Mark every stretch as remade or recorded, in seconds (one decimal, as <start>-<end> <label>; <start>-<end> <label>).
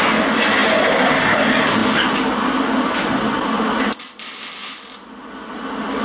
0.0-1.8 recorded; 1.8-4.0 remade; 4.0-4.6 recorded; 4.6-5.3 remade; 5.3-6.0 recorded